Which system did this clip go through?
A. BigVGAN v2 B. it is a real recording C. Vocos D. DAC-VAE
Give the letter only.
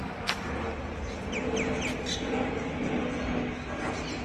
B